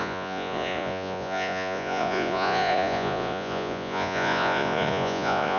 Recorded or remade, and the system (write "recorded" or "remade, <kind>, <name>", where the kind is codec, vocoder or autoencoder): remade, vocoder, Vocos